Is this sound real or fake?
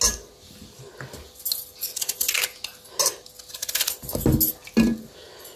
real